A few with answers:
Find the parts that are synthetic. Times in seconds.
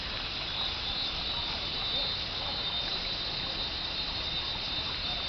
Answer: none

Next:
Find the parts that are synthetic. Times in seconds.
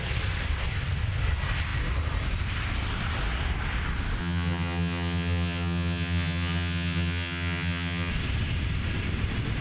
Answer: 4.2-8.1 (vocoder, HiFi-GAN)